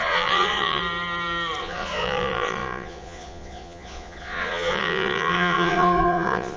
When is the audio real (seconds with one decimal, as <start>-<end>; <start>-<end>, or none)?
0.8-1.6